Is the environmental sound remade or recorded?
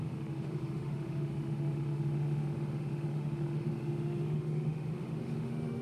remade